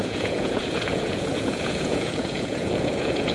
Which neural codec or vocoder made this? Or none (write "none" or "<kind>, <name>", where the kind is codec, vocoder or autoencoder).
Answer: vocoder, Vocos